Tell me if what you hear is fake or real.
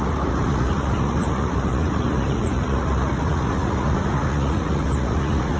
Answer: fake